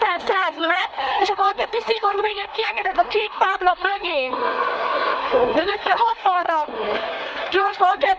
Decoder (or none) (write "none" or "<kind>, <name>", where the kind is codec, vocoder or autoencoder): codec, SNAC